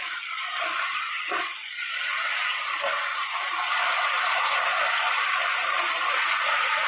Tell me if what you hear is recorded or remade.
recorded